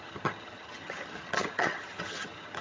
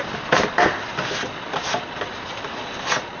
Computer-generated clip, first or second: first